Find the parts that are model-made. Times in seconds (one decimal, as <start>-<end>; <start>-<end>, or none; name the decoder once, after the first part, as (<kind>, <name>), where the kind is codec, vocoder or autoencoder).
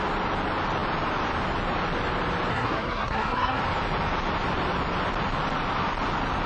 2.5-3.6 (codec, SNAC)